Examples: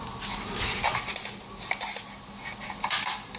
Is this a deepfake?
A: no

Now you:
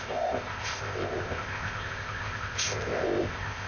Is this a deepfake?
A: yes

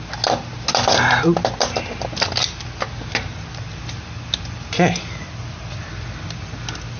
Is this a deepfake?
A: no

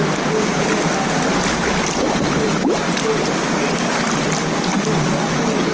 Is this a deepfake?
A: no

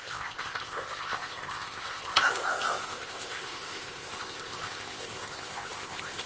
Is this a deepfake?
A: yes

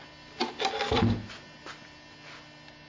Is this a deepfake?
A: no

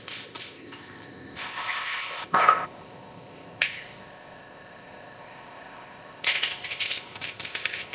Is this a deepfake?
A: yes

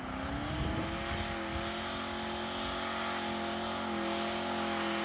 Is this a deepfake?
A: no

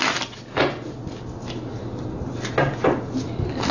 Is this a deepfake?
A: no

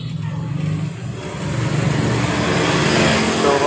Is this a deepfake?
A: no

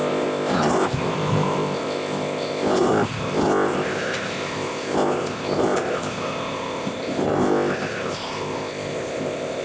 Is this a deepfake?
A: yes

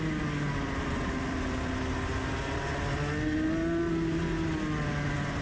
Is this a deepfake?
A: no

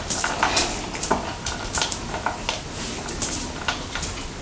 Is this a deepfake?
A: no